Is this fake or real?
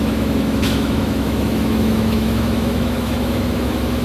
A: fake